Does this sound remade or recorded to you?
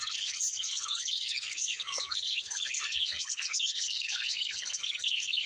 remade